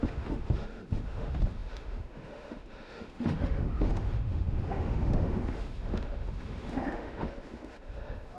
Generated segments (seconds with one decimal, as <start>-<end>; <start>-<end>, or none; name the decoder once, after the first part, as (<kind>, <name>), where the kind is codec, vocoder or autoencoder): 0.0-8.4 (autoencoder, DAC-VAE)